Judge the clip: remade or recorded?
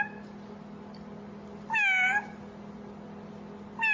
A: recorded